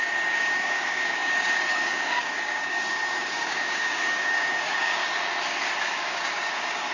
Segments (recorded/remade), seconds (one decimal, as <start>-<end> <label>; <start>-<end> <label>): 0.0-5.0 remade; 5.0-5.8 recorded; 5.8-6.9 remade